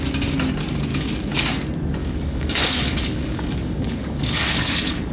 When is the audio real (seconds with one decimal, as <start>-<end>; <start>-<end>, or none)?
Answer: 0.0-0.9; 1.4-2.0